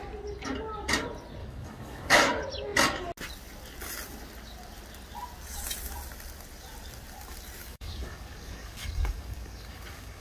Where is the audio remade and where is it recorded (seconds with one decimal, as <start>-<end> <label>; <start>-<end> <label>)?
0.0-1.4 recorded; 1.4-2.2 remade; 2.2-7.6 recorded; 7.6-10.2 remade